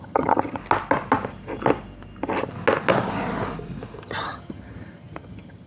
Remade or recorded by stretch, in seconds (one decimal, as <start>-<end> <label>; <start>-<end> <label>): 0.0-0.6 remade; 0.6-4.0 recorded; 4.0-5.7 remade